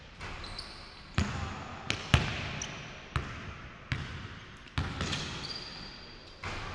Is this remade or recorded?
recorded